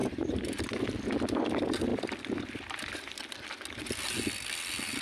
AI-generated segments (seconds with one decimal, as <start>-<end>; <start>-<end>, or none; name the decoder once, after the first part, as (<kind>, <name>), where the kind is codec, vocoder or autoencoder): 0.0-0.6 (vocoder, BigVGAN v2)